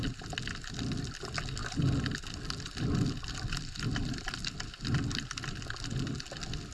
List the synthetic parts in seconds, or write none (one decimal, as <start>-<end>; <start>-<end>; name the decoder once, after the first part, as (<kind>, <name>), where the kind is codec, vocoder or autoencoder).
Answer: none